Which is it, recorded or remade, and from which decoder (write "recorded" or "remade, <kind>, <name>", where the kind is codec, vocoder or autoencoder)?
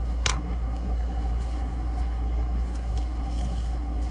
remade, codec, SNAC